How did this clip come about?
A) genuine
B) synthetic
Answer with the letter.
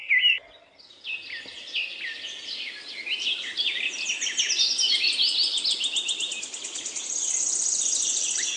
A